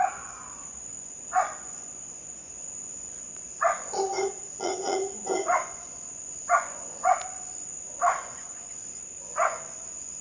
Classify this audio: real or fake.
fake